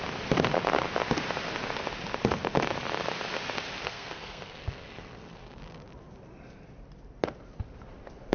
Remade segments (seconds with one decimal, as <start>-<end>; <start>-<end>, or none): 3.8-5.6